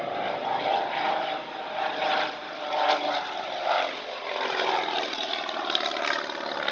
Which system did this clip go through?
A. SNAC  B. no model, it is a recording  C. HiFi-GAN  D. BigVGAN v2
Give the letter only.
D